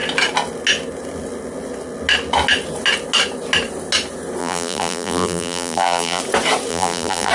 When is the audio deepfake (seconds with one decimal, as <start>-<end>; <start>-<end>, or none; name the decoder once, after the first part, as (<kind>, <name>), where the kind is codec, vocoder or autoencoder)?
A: 4.4-6.2 (vocoder, BigVGAN v2); 6.7-7.3